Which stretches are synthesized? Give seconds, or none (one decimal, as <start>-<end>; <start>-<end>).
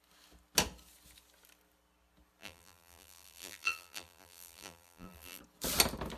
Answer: 2.4-5.4